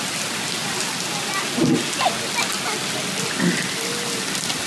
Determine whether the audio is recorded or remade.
recorded